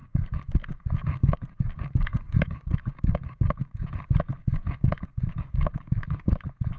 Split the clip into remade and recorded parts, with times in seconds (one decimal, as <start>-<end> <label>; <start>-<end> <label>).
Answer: 0.0-3.9 remade; 3.9-4.4 recorded; 4.4-6.3 remade; 6.3-6.8 recorded